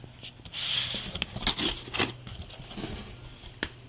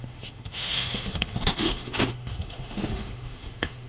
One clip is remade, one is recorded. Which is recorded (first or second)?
first